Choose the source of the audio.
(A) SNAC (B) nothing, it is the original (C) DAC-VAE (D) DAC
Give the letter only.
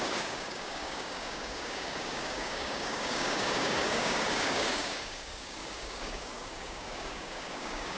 D